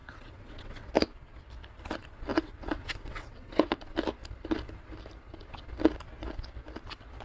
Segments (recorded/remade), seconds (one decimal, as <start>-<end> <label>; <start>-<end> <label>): 0.0-0.9 remade; 0.9-2.3 recorded; 2.3-3.8 remade; 3.8-7.2 recorded